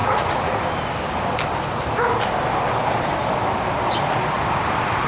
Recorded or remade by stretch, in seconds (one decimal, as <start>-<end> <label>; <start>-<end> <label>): 0.0-0.6 remade; 0.6-5.1 recorded